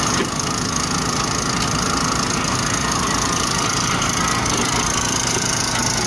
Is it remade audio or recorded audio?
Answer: recorded